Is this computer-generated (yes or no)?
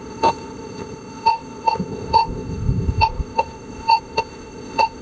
yes